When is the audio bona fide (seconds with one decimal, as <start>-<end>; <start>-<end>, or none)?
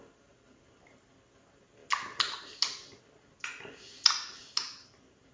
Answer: 0.0-5.3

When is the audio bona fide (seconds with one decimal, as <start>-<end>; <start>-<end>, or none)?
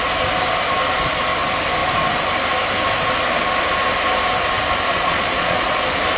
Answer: 0.0-4.9; 5.8-6.2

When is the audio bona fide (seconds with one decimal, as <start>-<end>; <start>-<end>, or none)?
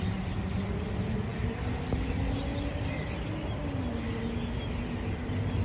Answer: 0.0-5.6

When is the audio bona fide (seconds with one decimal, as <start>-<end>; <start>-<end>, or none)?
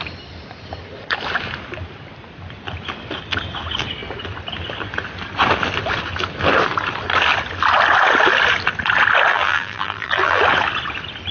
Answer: 0.0-9.3; 10.4-11.3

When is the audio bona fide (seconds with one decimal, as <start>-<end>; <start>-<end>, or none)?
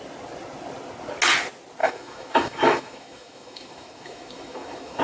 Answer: 0.0-1.8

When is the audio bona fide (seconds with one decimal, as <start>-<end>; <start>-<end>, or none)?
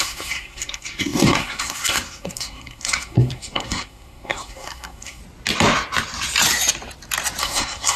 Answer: 5.2-7.4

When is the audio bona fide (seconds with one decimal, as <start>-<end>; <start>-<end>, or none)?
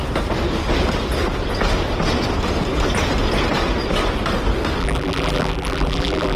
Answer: 0.0-4.8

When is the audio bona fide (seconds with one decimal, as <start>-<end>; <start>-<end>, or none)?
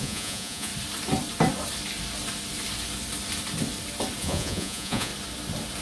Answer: 0.7-4.2; 5.1-5.8